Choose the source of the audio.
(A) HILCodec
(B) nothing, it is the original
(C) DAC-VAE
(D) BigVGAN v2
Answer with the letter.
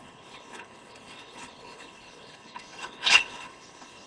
A